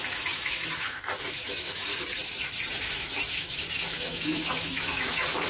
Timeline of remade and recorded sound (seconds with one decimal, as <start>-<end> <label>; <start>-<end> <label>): 0.0-1.9 remade; 1.9-2.7 recorded; 2.7-5.5 remade